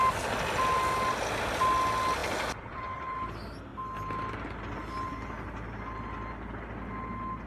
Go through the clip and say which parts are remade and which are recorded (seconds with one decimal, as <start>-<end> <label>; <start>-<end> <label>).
0.0-7.5 recorded